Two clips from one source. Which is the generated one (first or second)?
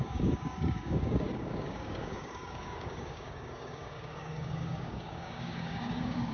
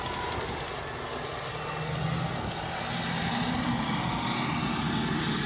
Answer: first